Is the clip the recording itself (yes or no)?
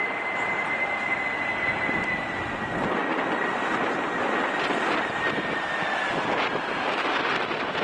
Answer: yes